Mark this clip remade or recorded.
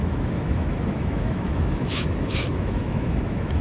remade